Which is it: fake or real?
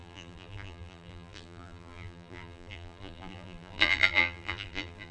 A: fake